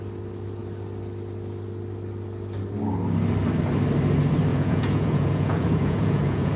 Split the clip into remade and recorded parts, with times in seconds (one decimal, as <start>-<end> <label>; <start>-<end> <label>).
0.0-4.5 recorded; 4.5-6.6 remade